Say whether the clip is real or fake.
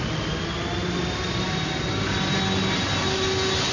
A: real